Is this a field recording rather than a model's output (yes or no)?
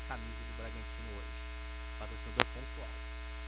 yes